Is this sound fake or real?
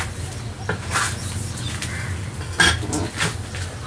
real